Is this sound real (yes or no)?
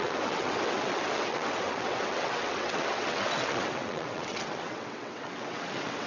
no